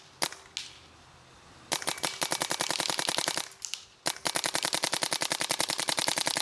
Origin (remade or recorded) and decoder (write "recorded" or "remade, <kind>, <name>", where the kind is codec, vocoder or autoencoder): recorded